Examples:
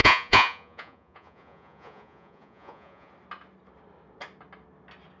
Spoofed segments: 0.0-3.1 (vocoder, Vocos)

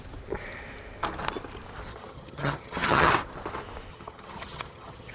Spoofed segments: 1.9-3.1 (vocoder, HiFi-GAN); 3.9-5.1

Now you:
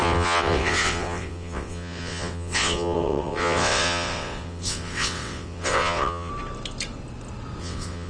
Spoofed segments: 0.0-6.3 (vocoder, WaveNeXt); 7.6-8.1

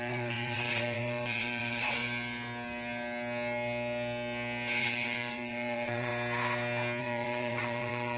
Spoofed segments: 0.0-2.0 (vocoder, WaveNeXt); 4.8-6.1; 7.0-8.2

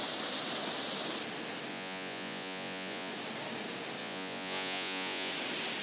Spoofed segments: 1.7-3.1 (vocoder, Vocos); 4.0-5.3

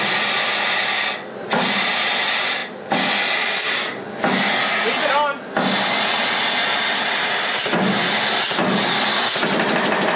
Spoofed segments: none

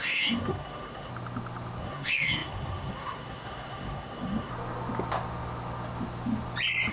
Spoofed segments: 0.0-1.1 (codec, SNAC); 1.8-4.5